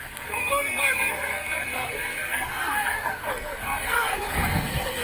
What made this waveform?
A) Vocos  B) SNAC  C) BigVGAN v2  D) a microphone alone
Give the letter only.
B